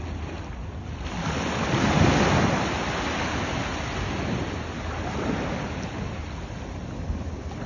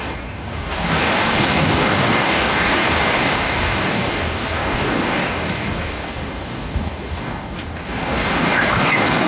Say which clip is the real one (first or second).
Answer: first